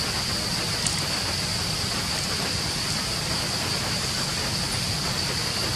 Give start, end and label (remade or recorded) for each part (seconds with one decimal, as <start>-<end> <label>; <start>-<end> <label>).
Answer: 0.0-5.8 recorded